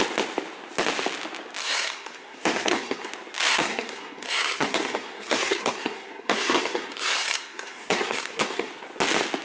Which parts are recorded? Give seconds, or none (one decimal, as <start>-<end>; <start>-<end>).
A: 0.0-1.6; 3.1-3.5; 8.7-9.4